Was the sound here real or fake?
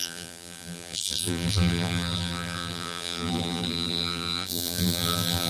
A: fake